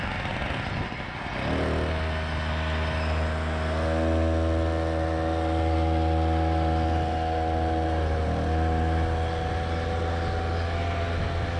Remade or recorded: recorded